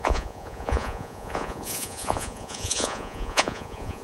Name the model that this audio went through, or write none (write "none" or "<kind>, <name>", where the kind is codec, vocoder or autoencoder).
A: vocoder, Vocos